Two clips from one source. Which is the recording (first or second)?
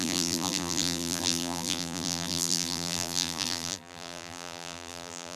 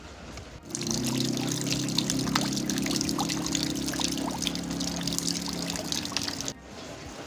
second